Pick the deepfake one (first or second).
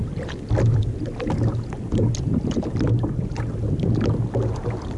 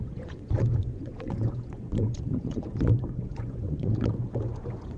second